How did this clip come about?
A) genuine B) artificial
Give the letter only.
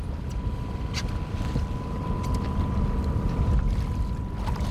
A